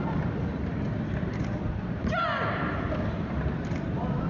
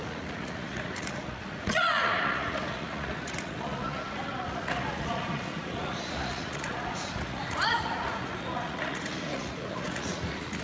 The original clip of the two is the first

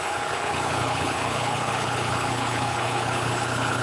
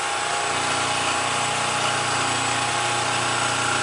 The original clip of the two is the second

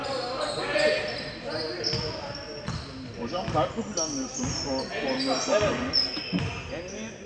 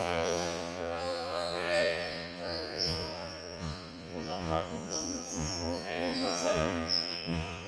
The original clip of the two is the first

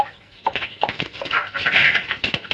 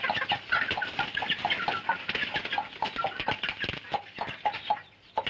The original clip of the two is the second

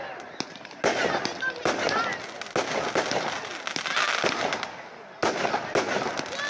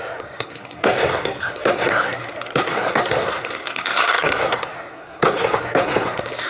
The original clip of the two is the first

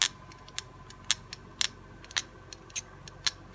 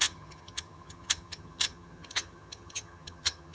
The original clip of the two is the first